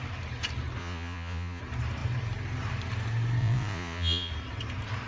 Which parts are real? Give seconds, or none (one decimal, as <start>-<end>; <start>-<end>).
0.0-0.8; 1.6-3.4; 4.3-5.1